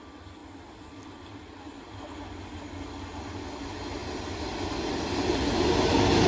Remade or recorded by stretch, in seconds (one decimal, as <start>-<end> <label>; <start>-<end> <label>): 0.0-6.3 recorded